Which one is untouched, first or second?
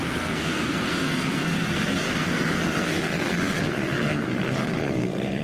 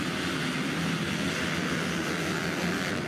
second